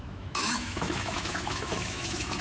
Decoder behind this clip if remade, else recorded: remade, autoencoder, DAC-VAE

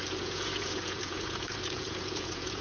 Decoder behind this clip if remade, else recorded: remade, vocoder, Vocos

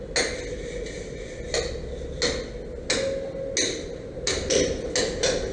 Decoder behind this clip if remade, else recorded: recorded